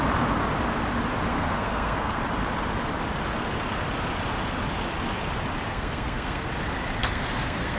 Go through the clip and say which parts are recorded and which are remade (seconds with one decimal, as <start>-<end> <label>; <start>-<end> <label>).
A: 0.0-1.3 recorded; 1.3-2.2 remade; 2.2-5.7 recorded; 5.7-6.5 remade; 6.5-7.0 recorded; 7.0-7.8 remade